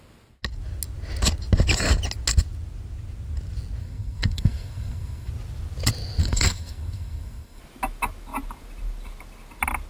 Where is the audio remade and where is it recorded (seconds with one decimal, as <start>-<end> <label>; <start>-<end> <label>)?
0.0-3.8 recorded; 3.8-5.3 remade; 5.3-6.2 recorded; 6.2-7.6 remade; 7.6-9.9 recorded